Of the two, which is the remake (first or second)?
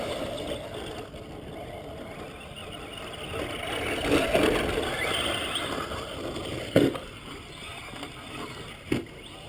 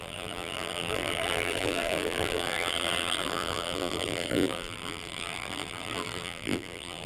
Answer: second